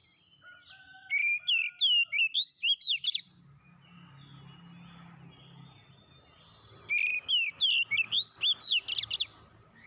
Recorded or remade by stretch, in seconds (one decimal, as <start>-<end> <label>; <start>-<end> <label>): 0.0-9.9 recorded